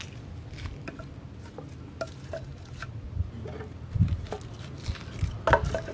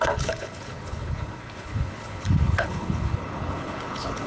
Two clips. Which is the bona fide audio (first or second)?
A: first